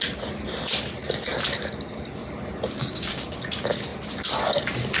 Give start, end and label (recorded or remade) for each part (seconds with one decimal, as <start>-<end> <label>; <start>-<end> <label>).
0.0-2.8 recorded; 2.8-3.4 remade; 3.4-5.0 recorded